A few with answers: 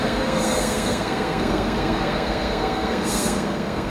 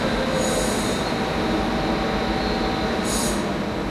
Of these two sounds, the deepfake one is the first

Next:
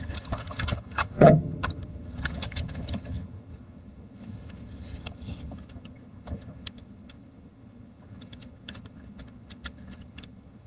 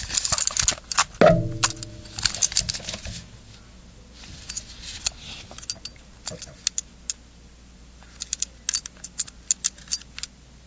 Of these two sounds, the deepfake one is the first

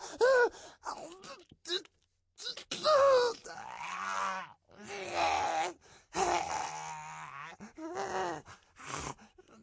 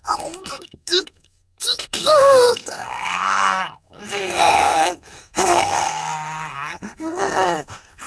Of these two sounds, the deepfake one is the second